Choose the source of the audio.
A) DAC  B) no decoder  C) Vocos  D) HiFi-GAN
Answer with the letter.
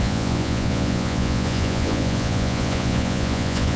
C